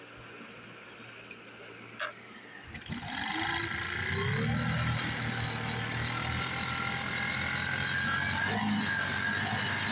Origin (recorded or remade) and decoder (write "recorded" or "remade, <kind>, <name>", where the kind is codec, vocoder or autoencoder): recorded